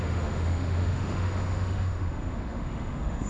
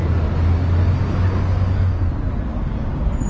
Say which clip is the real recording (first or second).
second